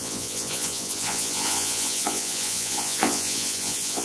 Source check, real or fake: fake